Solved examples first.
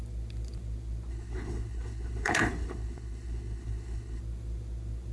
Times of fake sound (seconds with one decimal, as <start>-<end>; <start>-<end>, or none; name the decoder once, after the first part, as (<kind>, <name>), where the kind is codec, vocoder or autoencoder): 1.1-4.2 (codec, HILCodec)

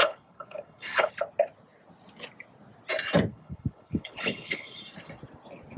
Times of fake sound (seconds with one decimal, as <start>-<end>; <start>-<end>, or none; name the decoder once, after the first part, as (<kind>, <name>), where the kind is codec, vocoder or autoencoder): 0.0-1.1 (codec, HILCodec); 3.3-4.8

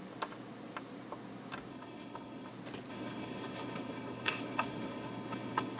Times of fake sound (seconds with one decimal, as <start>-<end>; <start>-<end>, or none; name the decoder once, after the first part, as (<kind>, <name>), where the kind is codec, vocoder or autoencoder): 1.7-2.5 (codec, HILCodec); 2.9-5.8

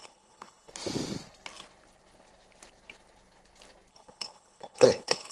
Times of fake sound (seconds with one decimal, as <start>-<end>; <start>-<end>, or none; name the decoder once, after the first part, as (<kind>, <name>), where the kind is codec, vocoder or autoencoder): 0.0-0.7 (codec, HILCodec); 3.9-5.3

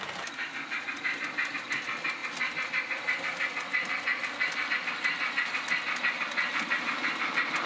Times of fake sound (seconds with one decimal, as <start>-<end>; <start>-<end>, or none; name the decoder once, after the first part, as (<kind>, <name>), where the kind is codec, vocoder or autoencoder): none